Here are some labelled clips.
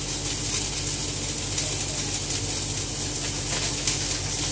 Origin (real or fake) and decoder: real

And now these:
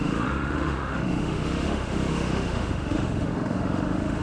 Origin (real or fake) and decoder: fake, autoencoder, DAC-VAE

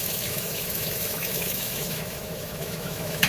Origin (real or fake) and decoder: fake, autoencoder, DAC-VAE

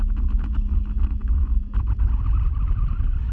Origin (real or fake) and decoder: real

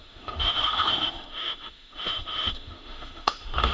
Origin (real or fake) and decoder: fake, autoencoder, DAC-VAE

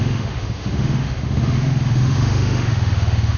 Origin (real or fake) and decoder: fake, autoencoder, DAC-VAE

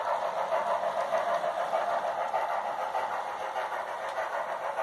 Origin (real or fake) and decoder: real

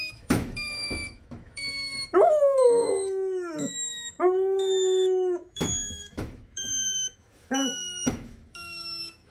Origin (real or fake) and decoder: fake, autoencoder, DAC-VAE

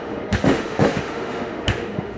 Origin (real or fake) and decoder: fake, autoencoder, DAC-VAE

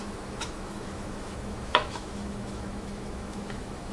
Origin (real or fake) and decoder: fake, autoencoder, DAC-VAE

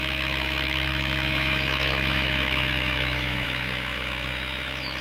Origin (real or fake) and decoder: fake, autoencoder, DAC-VAE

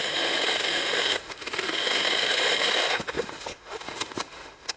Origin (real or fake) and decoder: fake, autoencoder, DAC-VAE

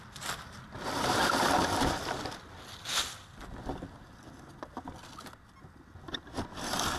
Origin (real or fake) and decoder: real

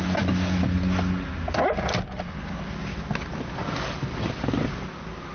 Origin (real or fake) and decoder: real